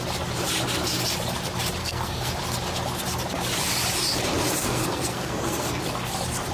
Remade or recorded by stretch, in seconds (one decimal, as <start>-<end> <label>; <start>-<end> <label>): 0.0-1.8 recorded; 1.8-2.3 remade; 2.3-4.6 recorded; 4.6-5.8 remade; 5.8-6.5 recorded